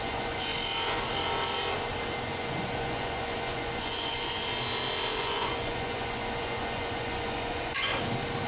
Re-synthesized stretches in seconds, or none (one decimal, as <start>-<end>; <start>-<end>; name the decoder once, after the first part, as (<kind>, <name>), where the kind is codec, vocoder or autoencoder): 0.0-0.5 (vocoder, Vocos); 2.2-4.4; 5.2-7.9